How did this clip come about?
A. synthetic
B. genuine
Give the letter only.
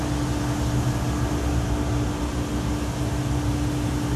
B